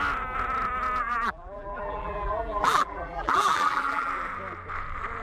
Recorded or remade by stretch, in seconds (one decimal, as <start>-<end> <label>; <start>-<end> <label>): 0.0-1.0 recorded; 1.0-4.1 remade; 4.1-5.2 recorded